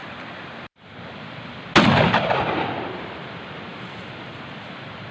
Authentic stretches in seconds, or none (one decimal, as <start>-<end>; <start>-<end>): 0.0-5.1